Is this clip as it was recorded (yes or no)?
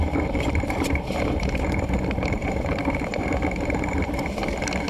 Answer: no